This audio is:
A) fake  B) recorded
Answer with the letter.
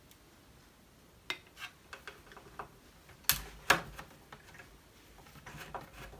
B